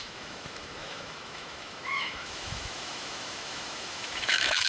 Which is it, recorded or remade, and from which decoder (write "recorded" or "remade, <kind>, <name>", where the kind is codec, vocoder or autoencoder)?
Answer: remade, autoencoder, DAC-VAE